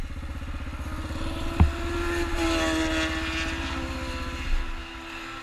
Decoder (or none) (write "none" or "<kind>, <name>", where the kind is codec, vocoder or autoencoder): none